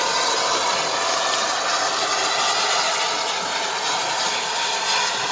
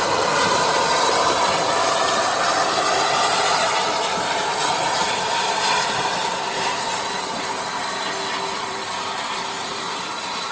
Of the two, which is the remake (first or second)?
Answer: second